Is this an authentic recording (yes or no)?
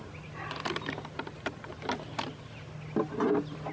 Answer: yes